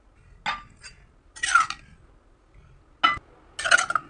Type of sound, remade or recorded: recorded